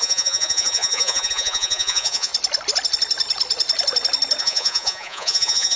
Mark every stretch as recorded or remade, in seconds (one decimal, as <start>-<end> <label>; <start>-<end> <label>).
0.0-2.3 remade; 2.3-4.4 recorded; 4.4-5.8 remade